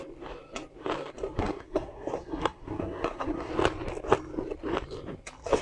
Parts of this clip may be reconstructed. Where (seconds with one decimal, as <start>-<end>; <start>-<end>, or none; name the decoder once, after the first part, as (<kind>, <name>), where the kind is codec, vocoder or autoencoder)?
1.4-3.5 (codec, SNAC)